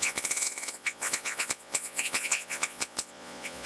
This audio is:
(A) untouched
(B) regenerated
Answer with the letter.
B